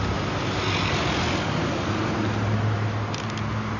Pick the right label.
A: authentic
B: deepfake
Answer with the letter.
A